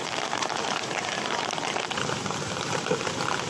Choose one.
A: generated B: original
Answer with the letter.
A